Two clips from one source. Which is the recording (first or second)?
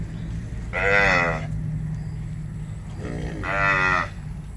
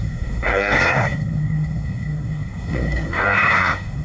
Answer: first